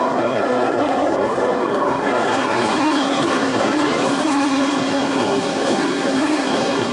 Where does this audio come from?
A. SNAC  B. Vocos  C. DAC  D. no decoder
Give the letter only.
A